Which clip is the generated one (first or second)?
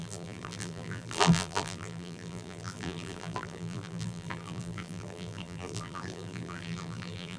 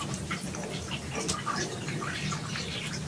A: first